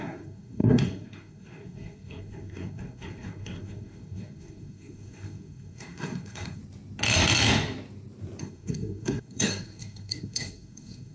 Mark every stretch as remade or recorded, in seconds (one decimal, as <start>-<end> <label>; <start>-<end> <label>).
0.0-6.6 remade; 6.6-8.4 recorded; 8.4-11.1 remade